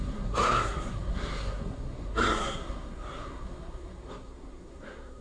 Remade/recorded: remade